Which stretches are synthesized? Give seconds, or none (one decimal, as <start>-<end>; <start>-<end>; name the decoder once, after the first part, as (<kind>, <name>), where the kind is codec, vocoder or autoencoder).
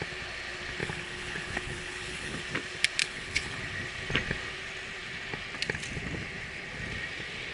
0.8-2.4 (codec, HILCodec); 3.0-3.6